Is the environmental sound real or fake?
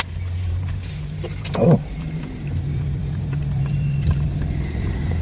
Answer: fake